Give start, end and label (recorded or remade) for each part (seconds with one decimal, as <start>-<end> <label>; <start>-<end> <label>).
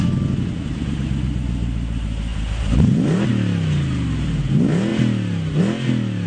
0.0-6.3 recorded